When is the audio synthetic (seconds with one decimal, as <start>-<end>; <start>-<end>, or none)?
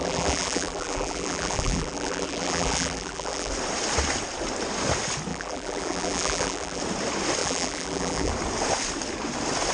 0.0-3.5; 5.3-6.8; 7.4-8.3